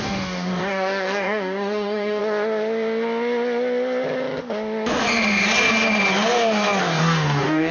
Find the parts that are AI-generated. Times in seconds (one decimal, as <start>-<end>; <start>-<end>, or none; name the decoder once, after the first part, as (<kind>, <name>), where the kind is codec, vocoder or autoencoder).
0.0-2.2 (codec, DAC); 6.8-7.7